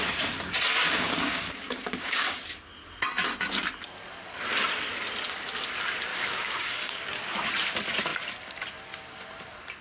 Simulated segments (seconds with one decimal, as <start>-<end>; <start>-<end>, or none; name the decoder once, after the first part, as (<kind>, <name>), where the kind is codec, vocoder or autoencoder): 0.8-2.4 (codec, DAC); 6.1-7.1